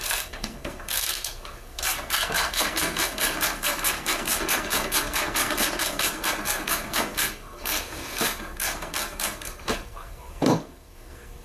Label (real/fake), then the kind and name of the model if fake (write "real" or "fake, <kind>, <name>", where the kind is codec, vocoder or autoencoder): fake, codec, SNAC